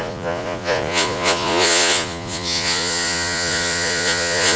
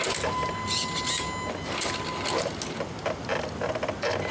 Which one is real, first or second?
second